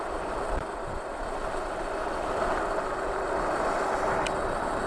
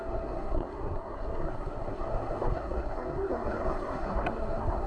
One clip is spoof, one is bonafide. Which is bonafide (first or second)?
first